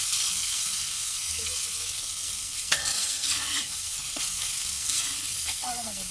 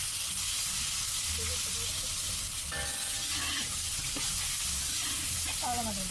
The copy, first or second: first